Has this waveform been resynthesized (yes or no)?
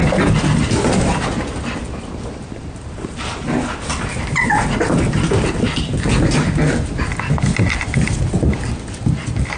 no